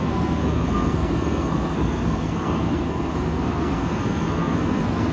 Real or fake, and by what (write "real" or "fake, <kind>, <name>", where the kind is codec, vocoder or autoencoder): fake, codec, SNAC